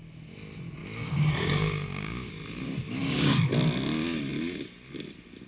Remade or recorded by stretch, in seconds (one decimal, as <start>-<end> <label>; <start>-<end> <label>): 0.0-0.8 recorded; 0.8-2.3 remade; 2.3-3.0 recorded; 3.0-3.5 remade; 3.5-5.5 recorded